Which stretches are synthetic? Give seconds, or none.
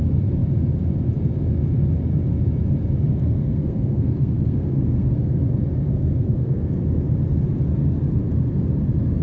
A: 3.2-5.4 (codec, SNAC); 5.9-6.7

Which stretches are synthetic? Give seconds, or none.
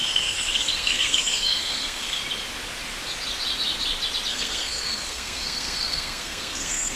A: 0.0-2.2 (codec, SNAC); 4.3-7.0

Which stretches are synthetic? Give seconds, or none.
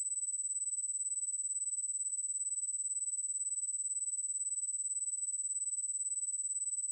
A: none